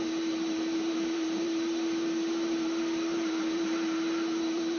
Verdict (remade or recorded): remade